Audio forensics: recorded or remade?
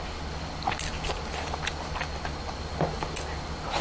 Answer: recorded